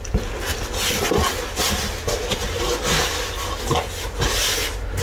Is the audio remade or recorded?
recorded